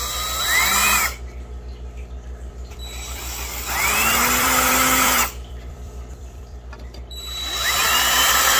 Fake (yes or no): yes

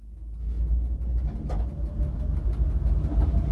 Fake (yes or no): no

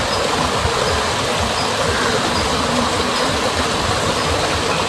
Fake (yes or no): no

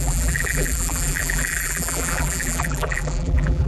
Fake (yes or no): yes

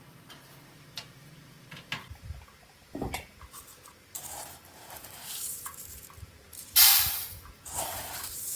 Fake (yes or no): yes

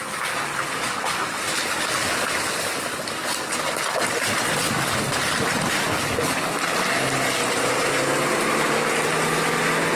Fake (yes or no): no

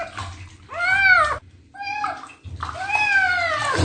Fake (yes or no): no